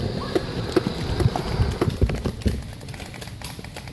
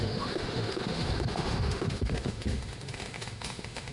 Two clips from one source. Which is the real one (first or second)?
first